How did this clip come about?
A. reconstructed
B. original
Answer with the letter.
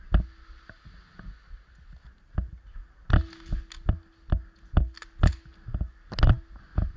B